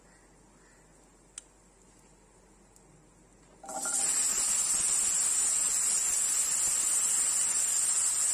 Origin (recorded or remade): recorded